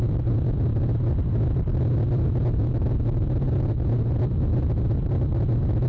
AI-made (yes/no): no